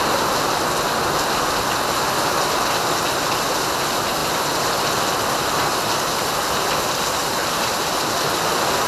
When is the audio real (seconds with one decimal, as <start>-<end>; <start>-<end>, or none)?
0.0-8.9